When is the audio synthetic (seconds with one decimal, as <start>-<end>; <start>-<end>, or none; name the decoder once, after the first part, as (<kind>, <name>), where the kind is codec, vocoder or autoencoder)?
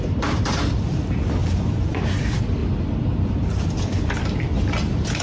0.0-2.6 (vocoder, BigVGAN v2); 3.3-5.2